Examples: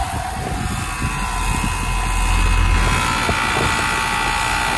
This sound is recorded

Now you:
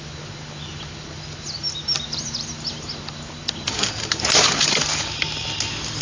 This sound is recorded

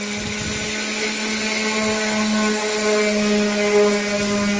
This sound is recorded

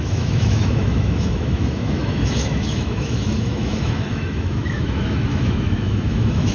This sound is remade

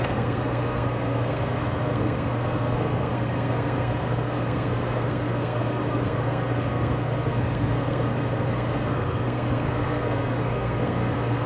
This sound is remade